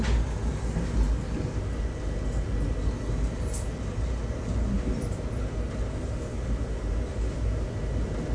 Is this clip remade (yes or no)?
no